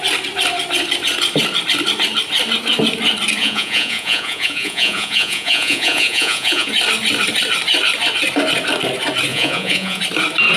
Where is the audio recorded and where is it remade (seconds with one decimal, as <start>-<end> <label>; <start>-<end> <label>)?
0.0-3.4 recorded; 3.4-6.7 remade; 6.7-9.3 recorded; 9.3-10.0 remade; 10.0-10.6 recorded